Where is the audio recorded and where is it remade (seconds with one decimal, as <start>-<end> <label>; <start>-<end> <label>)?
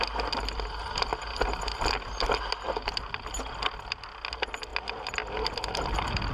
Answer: 0.0-6.3 recorded